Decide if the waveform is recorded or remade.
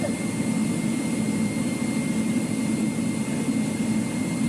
recorded